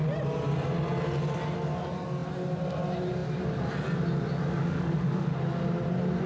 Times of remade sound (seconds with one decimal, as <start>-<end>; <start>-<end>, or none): 4.6-5.4